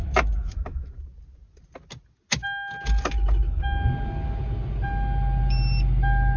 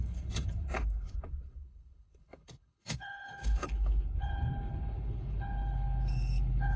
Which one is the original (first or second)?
first